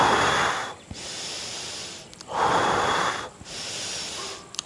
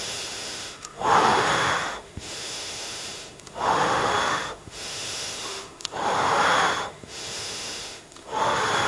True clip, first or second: first